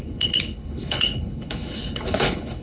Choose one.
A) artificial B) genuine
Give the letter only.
A